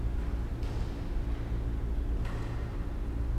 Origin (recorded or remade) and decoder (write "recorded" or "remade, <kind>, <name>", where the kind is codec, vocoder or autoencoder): recorded